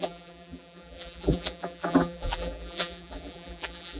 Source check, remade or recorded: remade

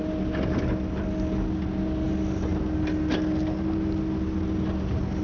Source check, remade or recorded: recorded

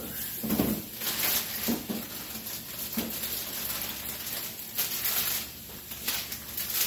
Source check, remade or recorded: recorded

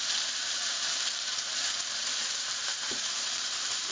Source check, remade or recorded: remade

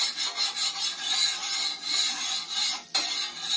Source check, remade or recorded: recorded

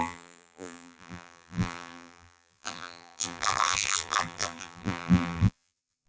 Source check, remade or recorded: remade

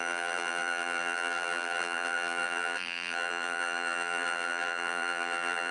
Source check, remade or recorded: remade